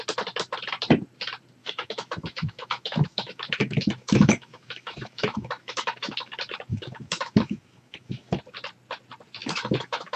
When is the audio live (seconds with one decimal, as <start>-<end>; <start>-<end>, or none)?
0.0-1.6; 6.3-6.7; 8.4-9.4